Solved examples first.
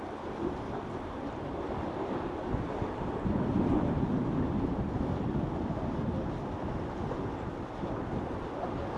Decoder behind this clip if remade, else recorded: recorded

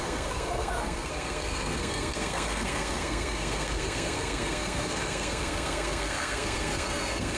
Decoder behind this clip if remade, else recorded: remade, codec, SNAC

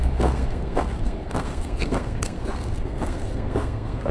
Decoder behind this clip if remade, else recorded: remade, codec, SNAC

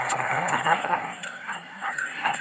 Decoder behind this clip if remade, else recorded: remade, codec, SNAC